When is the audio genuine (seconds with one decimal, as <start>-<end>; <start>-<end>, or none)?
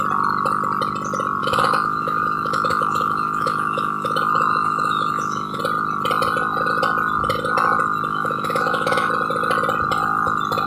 0.0-1.4; 5.6-8.1; 9.1-10.7